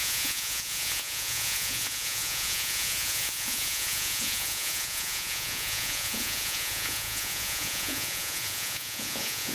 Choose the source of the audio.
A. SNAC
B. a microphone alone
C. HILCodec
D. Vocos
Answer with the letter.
D